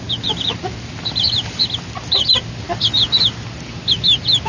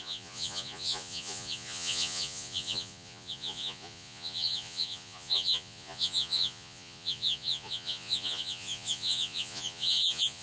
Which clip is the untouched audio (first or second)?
first